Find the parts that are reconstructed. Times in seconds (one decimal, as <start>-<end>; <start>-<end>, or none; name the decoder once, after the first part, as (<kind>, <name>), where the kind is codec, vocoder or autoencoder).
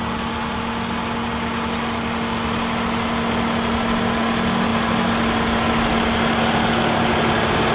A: none